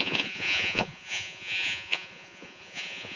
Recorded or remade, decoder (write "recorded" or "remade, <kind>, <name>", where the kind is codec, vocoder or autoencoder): remade, vocoder, Vocos